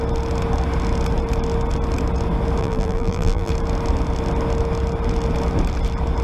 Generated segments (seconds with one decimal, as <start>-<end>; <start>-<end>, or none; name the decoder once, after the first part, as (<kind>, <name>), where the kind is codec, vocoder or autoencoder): 2.6-3.5 (vocoder, BigVGAN v2)